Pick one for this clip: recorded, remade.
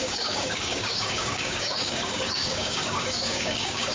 remade